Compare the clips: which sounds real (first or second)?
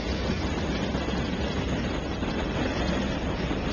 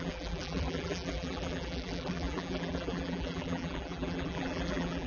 first